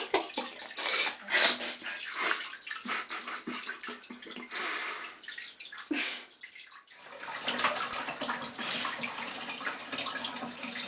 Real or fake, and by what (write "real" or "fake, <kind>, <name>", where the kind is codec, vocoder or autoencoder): real